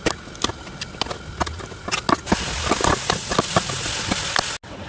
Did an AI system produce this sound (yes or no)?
no